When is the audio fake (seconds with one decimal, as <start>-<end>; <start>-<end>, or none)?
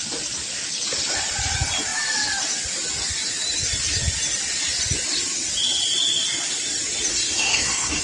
7.1-8.0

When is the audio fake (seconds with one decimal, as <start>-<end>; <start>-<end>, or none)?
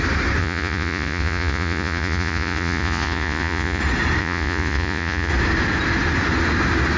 0.4-3.8; 4.2-5.3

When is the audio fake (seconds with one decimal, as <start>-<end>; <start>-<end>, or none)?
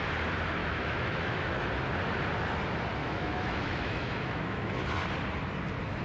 0.6-1.5; 3.0-4.8